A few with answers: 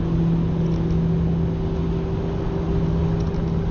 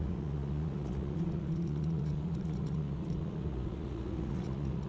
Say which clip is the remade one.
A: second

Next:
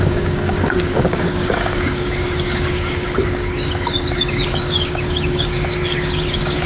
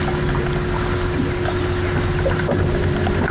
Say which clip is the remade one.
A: first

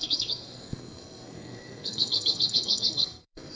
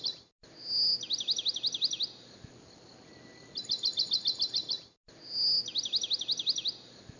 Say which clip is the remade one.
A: first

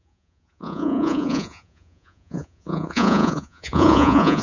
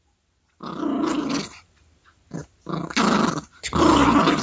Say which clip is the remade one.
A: first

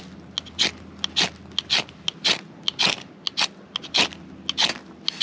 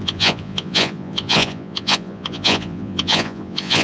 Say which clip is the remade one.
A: second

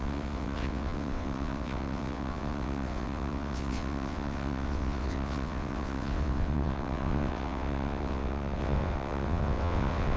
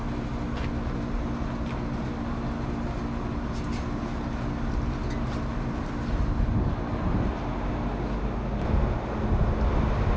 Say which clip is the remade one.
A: first